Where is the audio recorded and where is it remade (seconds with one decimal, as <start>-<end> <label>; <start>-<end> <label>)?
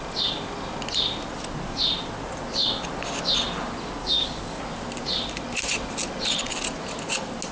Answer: 0.0-4.0 recorded; 4.0-4.6 remade; 4.6-7.5 recorded